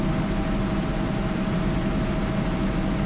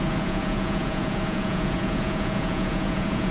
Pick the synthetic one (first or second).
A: second